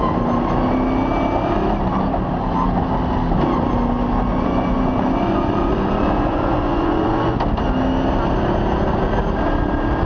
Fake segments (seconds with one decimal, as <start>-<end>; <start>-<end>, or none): 4.3-7.4